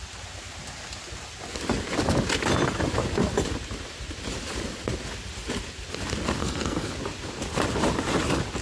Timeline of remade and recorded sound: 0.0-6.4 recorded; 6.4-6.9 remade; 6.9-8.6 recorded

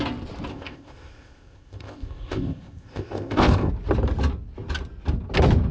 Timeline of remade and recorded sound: 0.0-0.5 recorded; 0.5-3.7 remade; 3.7-5.7 recorded

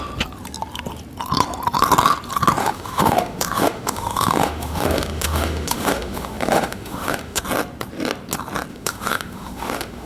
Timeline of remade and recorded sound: 0.0-2.6 recorded; 2.6-7.4 remade; 7.4-8.7 recorded; 8.7-10.1 remade

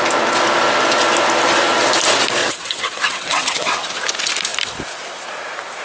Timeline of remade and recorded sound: 0.0-2.4 recorded; 2.4-3.8 remade; 3.8-5.8 recorded

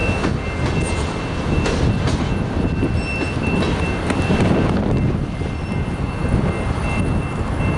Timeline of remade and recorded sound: 0.0-7.8 recorded

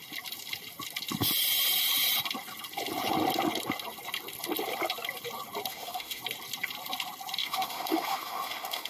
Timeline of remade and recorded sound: 0.0-5.7 recorded; 5.7-6.2 remade; 6.2-7.4 recorded; 7.4-8.9 remade

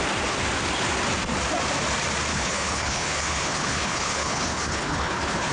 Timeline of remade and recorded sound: 0.0-2.3 recorded; 2.3-5.5 remade